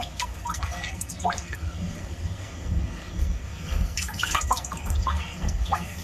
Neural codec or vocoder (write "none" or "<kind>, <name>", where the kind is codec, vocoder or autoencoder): codec, SNAC